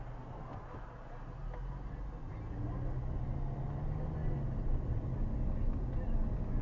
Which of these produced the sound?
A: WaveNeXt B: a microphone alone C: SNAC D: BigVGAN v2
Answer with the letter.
B